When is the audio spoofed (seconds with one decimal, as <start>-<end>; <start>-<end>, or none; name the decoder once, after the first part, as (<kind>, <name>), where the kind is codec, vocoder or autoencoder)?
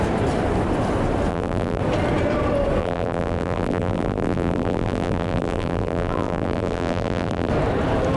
1.3-1.8 (vocoder, BigVGAN v2); 2.8-7.5